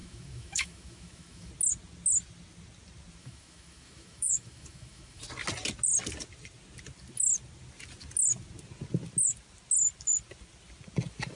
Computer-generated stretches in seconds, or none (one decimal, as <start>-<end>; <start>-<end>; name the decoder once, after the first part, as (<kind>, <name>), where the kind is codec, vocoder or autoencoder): 0.0-1.5 (autoencoder, DAC-VAE); 3.2-5.2